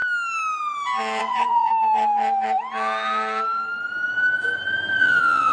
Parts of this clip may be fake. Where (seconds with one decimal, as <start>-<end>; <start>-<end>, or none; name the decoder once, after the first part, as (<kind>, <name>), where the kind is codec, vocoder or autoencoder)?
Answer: 1.2-1.7 (vocoder, Vocos); 5.0-5.5